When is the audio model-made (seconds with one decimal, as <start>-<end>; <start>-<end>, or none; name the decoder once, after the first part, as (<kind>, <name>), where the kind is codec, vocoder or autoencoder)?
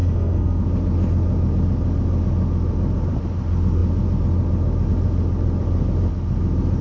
0.0-0.6 (codec, SNAC)